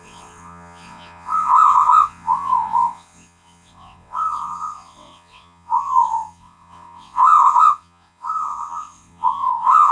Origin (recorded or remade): remade